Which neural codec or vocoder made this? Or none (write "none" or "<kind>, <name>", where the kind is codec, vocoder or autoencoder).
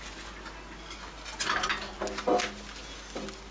none